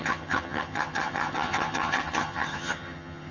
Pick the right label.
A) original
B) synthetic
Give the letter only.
B